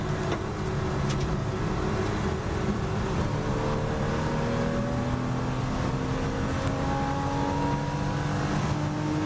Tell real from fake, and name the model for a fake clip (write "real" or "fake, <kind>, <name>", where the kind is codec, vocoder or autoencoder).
real